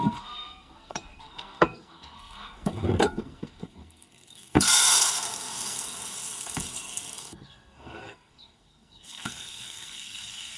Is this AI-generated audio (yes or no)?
yes